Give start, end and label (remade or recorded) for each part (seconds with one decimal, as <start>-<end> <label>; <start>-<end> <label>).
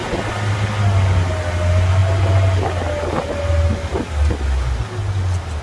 0.0-5.6 recorded